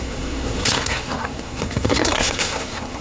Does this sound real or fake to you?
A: fake